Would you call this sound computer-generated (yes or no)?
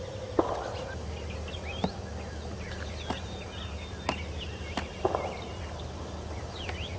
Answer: no